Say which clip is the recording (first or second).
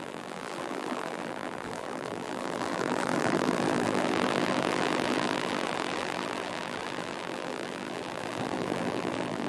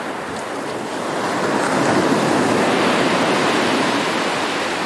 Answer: second